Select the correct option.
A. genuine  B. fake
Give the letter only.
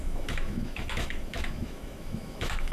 B